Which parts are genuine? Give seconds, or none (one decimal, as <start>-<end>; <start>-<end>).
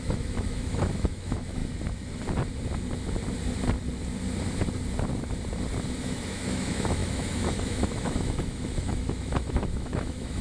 1.6-6.0